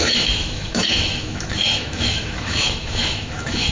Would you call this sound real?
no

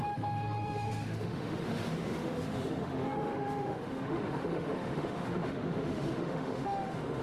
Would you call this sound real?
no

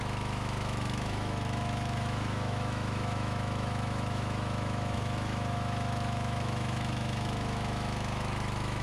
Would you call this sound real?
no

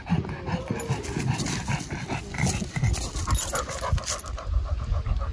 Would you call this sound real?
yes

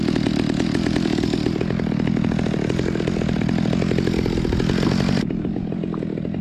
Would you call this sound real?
yes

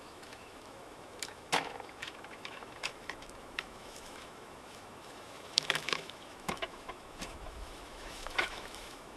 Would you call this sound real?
no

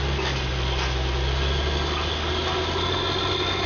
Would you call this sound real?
yes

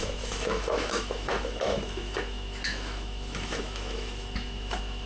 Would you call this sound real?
no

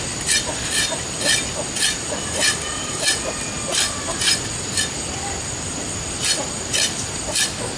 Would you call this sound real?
yes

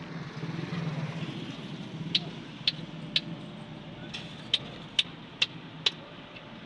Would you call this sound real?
yes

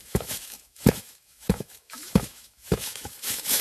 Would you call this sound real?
no